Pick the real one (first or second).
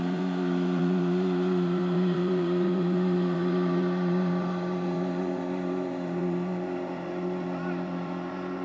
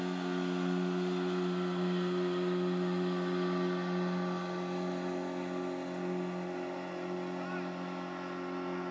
second